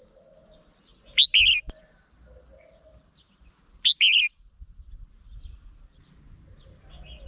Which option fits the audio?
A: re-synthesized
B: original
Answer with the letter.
B